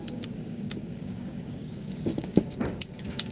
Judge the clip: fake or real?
fake